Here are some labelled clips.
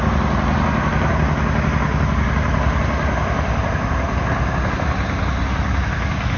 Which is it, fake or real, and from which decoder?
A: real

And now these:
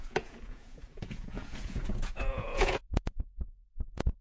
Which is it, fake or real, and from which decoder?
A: fake, vocoder, Vocos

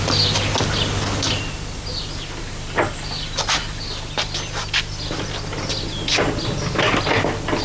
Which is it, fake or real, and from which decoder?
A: real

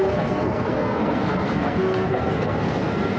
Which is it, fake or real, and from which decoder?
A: fake, codec, SNAC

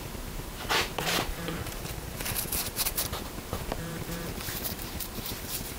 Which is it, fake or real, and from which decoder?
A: fake, vocoder, BigVGAN v2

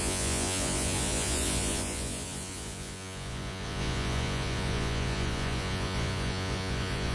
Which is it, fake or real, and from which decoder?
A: fake, vocoder, Vocos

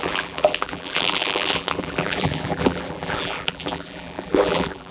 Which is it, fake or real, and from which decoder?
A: fake, vocoder, BigVGAN v2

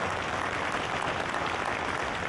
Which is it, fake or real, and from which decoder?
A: real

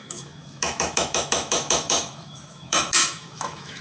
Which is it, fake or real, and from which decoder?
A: fake, autoencoder, DAC-VAE